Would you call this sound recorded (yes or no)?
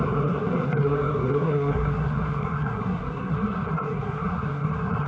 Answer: no